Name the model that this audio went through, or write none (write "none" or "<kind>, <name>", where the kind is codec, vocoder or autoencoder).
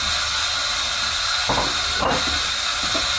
none